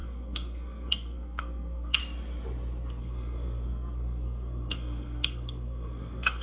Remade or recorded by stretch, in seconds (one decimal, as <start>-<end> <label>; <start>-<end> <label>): 0.0-2.0 remade; 2.0-3.0 recorded; 3.0-6.4 remade

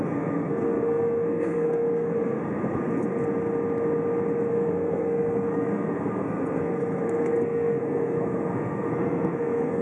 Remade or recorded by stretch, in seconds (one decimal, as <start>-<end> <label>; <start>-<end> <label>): 0.0-3.1 remade; 3.1-4.5 recorded; 4.5-9.8 remade

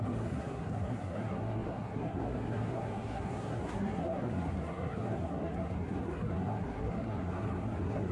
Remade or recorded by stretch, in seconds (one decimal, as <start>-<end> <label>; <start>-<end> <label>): 0.0-8.1 remade

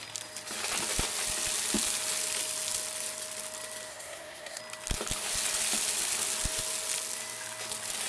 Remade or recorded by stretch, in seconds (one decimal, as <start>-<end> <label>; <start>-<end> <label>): 0.0-3.9 recorded; 3.9-4.6 remade; 4.6-8.1 recorded

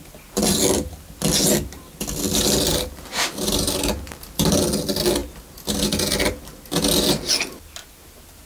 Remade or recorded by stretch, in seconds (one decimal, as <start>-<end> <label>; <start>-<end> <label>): 0.0-8.5 recorded

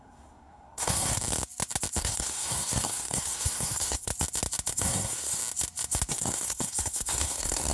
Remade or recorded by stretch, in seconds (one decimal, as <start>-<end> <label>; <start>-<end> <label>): 0.0-1.2 remade; 1.2-2.0 recorded; 2.0-4.1 remade; 4.1-4.7 recorded; 4.7-5.4 remade; 5.4-6.1 recorded; 6.1-7.7 remade

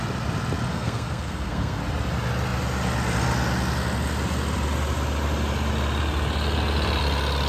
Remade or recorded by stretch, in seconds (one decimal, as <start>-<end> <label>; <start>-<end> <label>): 0.0-0.7 recorded; 0.7-1.8 remade; 1.8-7.5 recorded